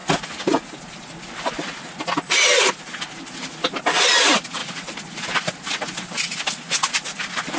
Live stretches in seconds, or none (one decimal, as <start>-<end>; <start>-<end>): 0.0-7.6